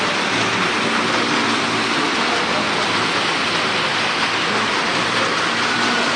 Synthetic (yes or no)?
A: no